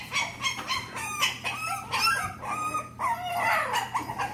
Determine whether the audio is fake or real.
real